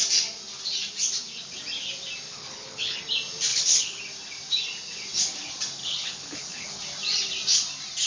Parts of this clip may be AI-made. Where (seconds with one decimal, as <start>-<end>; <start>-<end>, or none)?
2.3-3.0; 3.5-4.0; 5.8-6.8